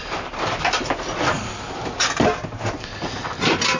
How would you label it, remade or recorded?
recorded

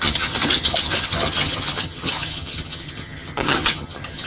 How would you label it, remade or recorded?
remade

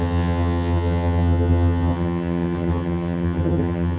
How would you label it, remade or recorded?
remade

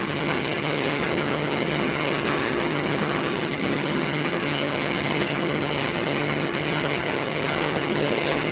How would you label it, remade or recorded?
remade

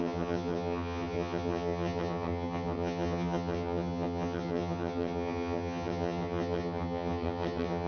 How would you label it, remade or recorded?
remade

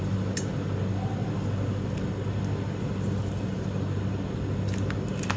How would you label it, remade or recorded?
recorded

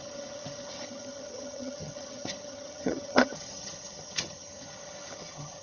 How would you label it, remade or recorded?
remade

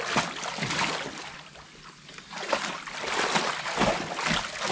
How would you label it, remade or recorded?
recorded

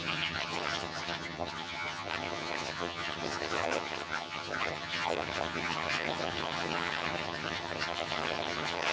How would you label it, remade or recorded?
remade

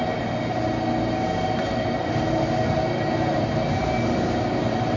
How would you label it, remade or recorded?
recorded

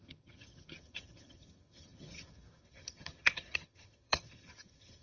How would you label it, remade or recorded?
remade